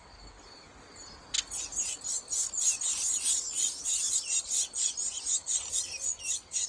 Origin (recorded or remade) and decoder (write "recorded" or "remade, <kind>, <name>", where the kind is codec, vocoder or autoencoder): recorded